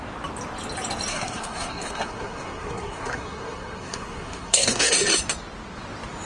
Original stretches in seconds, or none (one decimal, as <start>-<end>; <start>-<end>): 0.0-1.1; 4.9-6.3